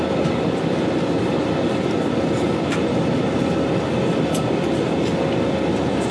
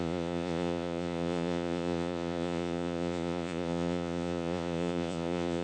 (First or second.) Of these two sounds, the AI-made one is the second